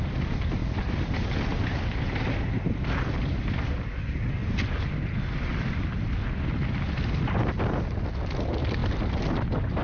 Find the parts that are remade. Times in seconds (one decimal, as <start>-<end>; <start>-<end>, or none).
none